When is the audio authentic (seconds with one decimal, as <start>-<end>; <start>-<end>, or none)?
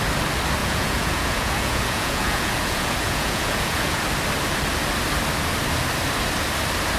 0.0-0.6; 4.0-7.0